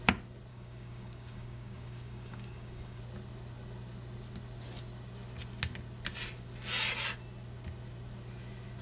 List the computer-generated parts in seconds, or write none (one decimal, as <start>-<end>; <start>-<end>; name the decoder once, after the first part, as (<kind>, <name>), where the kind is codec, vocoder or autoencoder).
0.5-3.0 (codec, DAC)